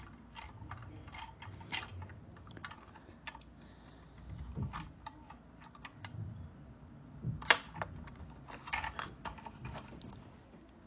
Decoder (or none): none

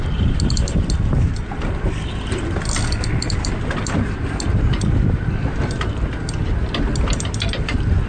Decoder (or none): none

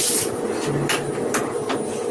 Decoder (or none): none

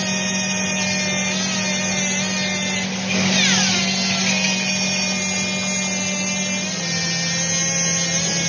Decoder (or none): none